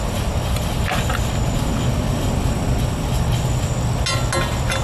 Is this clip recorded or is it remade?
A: recorded